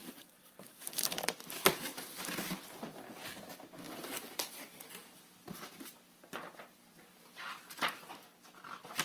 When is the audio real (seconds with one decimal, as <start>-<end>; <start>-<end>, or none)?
3.2-3.8